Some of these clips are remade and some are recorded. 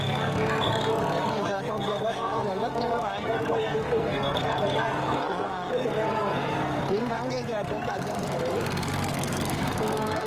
remade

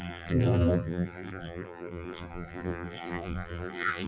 remade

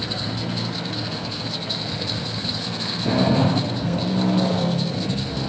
remade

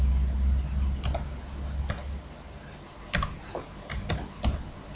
recorded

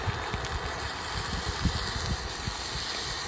recorded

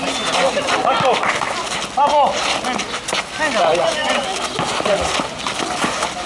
recorded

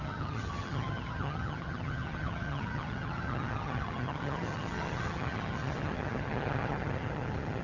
remade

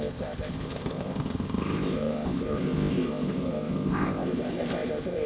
remade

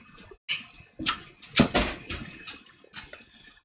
recorded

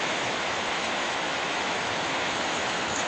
remade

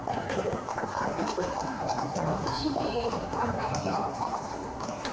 remade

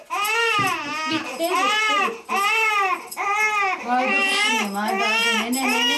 recorded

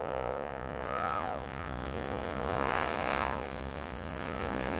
remade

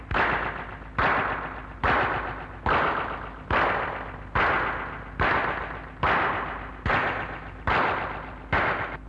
recorded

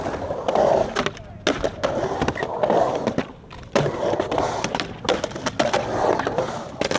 recorded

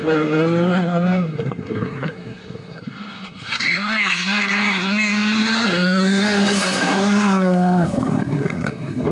remade